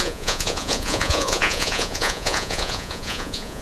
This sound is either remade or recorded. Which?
remade